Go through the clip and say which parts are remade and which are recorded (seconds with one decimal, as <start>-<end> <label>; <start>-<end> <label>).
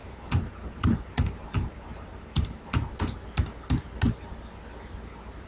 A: 0.0-2.8 remade; 2.8-5.5 recorded